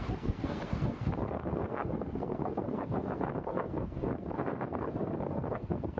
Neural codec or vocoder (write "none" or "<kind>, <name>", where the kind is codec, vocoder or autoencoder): codec, SNAC